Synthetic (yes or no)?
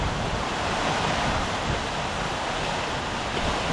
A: no